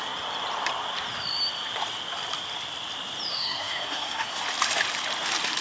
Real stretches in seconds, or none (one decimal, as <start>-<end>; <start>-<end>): 0.0-3.3; 4.4-5.6